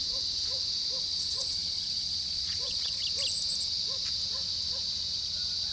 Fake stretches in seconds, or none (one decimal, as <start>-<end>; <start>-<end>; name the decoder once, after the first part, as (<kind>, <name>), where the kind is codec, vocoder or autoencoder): 1.0-3.0 (vocoder, WaveNeXt)